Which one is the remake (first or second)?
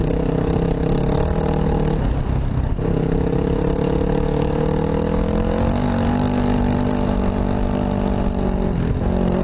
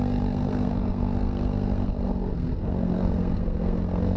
second